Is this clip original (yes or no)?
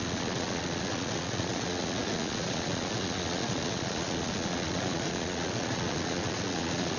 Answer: no